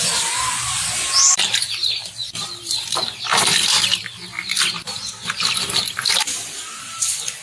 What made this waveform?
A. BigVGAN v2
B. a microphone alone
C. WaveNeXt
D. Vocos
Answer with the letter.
A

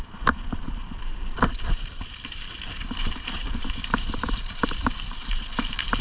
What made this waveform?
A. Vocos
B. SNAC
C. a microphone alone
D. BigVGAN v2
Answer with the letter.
D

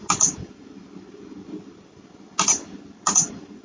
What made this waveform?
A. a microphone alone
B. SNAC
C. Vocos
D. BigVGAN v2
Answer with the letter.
A